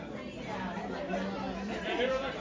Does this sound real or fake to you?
real